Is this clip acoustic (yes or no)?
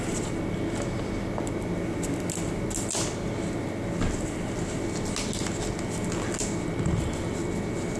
yes